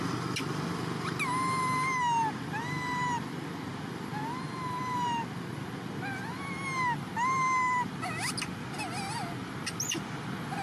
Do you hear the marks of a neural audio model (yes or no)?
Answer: no